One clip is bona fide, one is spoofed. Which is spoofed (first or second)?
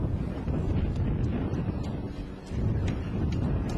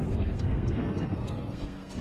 second